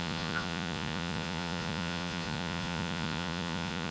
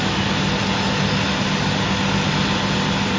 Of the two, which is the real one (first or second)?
second